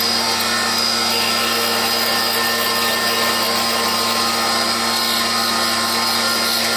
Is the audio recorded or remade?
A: recorded